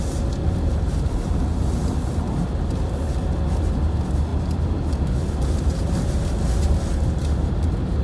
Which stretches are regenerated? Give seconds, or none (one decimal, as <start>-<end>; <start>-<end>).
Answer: none